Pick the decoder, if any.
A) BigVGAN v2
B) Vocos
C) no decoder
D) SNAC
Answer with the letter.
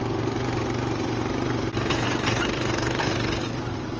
C